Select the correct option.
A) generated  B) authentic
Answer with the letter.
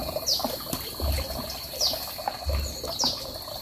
B